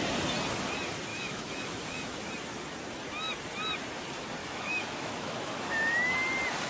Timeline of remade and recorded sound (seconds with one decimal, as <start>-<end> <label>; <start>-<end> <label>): 0.0-1.1 recorded; 1.1-2.3 remade; 2.3-4.4 recorded; 4.4-6.1 remade; 6.1-6.7 recorded